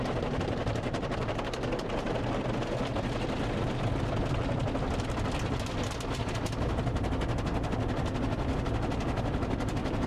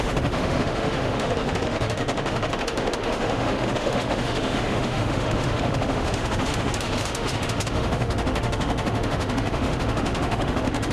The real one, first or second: first